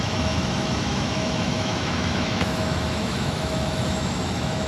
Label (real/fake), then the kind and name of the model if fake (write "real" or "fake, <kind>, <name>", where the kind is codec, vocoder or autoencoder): fake, autoencoder, DAC-VAE